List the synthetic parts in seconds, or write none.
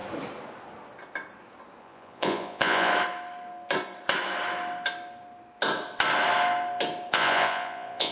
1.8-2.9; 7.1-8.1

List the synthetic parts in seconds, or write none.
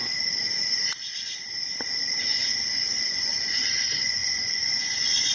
2.2-5.3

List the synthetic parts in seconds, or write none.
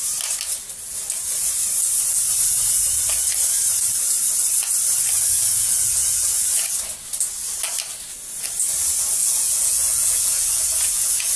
5.3-6.7; 9.2-11.4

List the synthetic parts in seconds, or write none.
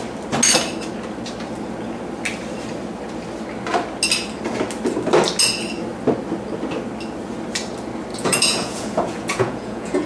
8.1-10.1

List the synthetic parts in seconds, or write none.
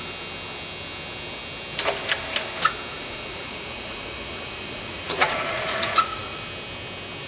2.9-6.4